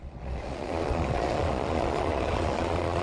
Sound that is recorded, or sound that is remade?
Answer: remade